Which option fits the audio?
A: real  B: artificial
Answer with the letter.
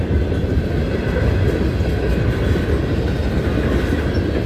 A